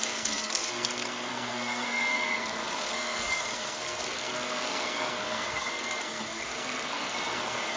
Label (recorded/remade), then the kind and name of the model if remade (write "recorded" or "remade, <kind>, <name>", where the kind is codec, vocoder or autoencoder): remade, codec, SNAC